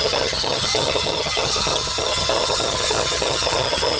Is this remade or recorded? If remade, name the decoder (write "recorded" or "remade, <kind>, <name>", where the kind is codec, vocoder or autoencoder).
remade, vocoder, HiFi-GAN